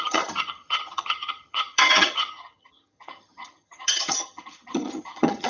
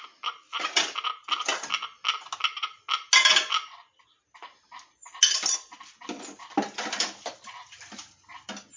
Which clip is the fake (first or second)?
first